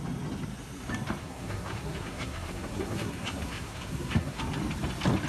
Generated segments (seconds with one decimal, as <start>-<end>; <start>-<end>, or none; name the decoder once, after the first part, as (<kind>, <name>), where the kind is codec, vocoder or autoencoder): 1.2-4.4 (codec, SNAC)